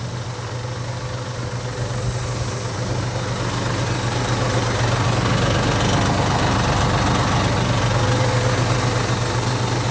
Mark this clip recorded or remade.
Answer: recorded